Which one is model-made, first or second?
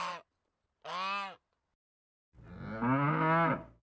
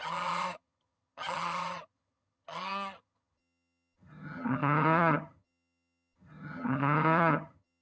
second